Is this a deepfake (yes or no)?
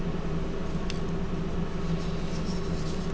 no